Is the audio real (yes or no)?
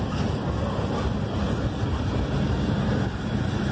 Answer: yes